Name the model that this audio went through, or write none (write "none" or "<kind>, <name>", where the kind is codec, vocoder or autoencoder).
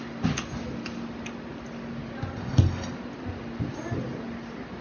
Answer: none